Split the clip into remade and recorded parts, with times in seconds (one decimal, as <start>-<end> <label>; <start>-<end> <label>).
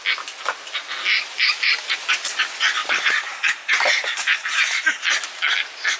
0.0-2.8 recorded; 2.8-4.9 remade; 4.9-6.0 recorded